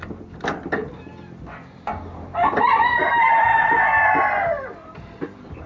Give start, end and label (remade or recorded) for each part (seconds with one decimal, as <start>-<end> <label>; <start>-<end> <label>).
0.0-5.7 remade